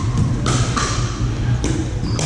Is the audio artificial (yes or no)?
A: no